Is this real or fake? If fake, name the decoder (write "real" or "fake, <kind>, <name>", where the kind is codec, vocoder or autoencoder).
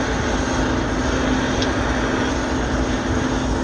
real